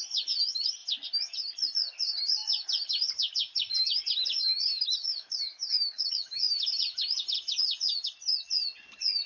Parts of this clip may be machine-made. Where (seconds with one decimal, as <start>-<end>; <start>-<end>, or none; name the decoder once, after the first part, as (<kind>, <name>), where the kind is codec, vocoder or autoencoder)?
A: 4.7-6.6 (autoencoder, DAC-VAE)

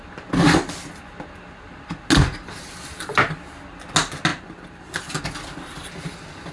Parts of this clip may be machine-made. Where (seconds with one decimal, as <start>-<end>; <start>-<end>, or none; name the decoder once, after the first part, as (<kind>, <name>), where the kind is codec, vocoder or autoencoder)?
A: none

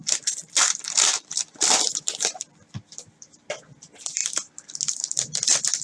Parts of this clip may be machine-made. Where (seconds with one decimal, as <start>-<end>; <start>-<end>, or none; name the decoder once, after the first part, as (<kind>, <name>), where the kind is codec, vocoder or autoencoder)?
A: 0.0-4.2 (vocoder, BigVGAN v2); 4.9-5.8

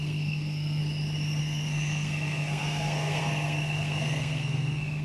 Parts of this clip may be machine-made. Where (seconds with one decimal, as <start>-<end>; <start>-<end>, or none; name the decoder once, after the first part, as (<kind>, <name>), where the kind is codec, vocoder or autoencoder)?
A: 0.0-0.8 (codec, SNAC); 1.4-5.0

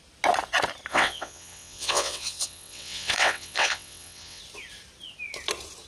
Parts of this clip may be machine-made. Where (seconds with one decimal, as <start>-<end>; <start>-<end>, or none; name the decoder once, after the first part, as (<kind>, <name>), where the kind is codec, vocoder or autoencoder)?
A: 0.9-4.4 (vocoder, WaveNeXt)